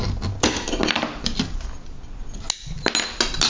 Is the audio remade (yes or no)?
no